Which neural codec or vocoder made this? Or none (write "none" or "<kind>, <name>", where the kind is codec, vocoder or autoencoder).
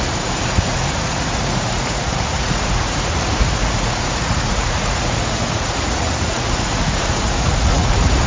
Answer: vocoder, Vocos